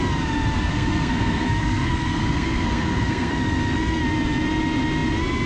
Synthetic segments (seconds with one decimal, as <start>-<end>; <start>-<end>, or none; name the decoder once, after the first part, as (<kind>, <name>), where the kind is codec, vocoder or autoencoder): 0.7-4.0 (codec, SNAC)